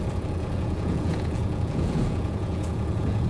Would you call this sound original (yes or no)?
no